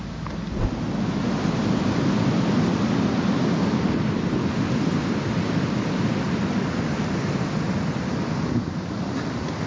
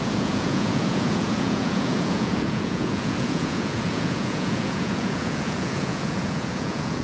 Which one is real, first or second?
first